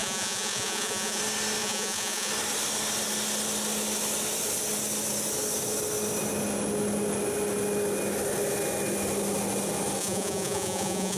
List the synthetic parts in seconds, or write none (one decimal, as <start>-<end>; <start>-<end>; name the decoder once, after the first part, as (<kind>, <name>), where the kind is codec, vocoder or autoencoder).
0.0-1.2 (vocoder, Vocos); 1.6-2.3; 10.0-11.2